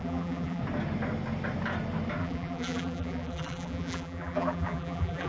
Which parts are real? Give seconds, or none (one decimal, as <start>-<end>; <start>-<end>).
0.6-2.2